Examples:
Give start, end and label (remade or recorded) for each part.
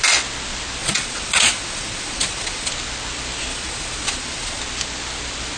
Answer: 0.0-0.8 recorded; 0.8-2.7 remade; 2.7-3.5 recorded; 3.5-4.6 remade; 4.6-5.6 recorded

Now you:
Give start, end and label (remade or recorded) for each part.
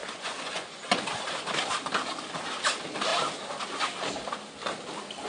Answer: 0.0-1.0 remade; 1.0-5.3 recorded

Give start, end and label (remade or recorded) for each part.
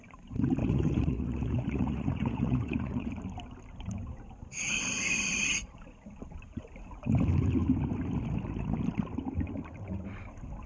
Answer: 0.0-0.6 recorded; 0.6-3.1 remade; 3.1-10.7 recorded